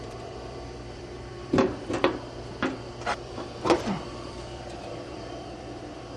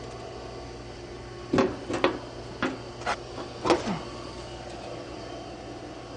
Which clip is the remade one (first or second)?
first